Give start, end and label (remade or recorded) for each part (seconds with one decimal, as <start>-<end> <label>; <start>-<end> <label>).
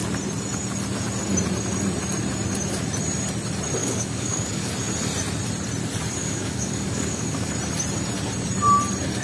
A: 0.0-3.8 recorded; 3.8-4.7 remade; 4.7-6.2 recorded; 6.2-7.5 remade; 7.5-9.2 recorded